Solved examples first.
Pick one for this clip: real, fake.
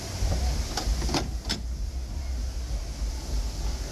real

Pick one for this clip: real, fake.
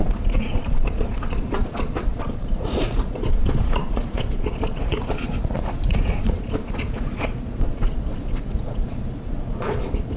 fake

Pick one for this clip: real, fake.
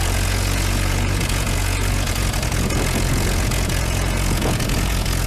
fake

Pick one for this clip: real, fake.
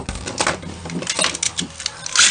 real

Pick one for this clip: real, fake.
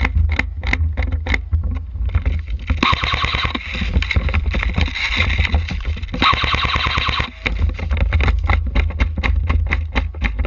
real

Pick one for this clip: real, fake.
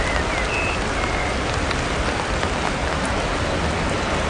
real